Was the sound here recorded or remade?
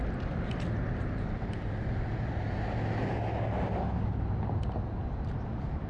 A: recorded